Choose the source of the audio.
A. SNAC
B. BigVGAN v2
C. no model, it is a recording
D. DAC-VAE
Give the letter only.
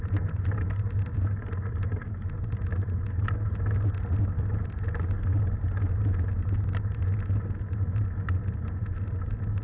C